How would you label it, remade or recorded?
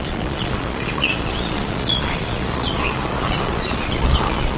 remade